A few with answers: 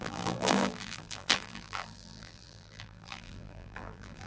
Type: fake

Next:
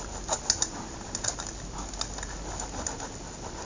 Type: real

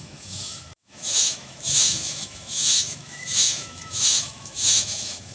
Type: fake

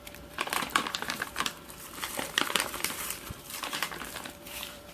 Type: fake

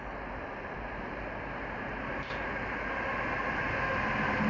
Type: real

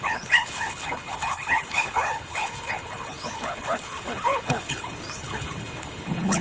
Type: fake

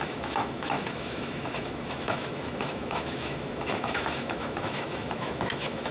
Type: fake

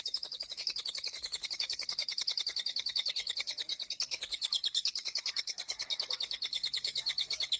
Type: fake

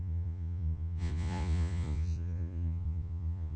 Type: fake